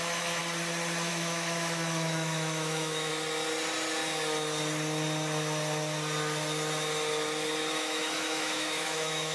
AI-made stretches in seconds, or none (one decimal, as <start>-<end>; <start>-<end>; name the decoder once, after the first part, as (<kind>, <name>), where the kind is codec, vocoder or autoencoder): 0.0-0.4 (autoencoder, DAC-VAE); 1.1-3.1; 7.7-9.3